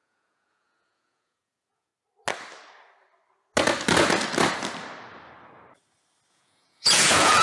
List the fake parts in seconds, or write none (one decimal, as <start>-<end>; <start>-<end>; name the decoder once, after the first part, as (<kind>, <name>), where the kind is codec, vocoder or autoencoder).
0.0-1.9 (vocoder, Vocos); 6.3-7.4